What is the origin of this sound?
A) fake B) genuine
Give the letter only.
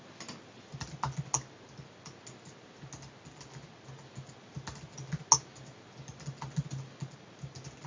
B